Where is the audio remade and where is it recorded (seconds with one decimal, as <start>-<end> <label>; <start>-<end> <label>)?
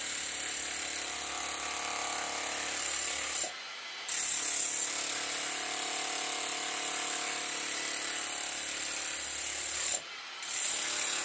0.0-11.2 recorded